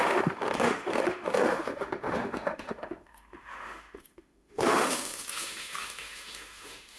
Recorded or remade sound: remade